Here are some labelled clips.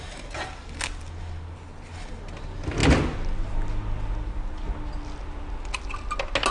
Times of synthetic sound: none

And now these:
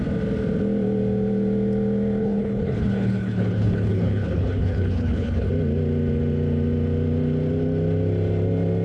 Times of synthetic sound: 2.2-5.5 (codec, HILCodec)

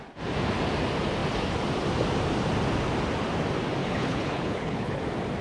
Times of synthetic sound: 3.8-5.0 (codec, HILCodec)

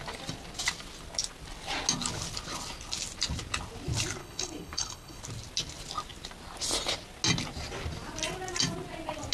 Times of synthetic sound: 4.2-5.2 (codec, HILCodec)

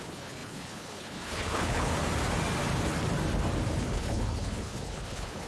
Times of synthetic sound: 0.0-1.9 (codec, HILCodec); 3.8-5.5

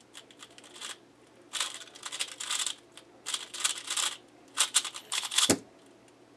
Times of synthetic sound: 5.0-5.5 (codec, HILCodec)

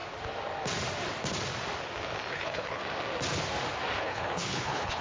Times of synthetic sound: 2.3-2.8 (codec, HILCodec); 4.0-5.0

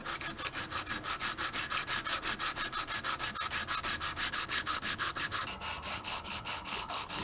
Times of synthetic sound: 4.3-5.4 (codec, HILCodec); 5.9-7.2